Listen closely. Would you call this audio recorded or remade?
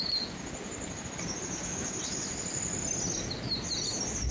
recorded